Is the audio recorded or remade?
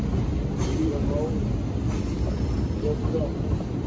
recorded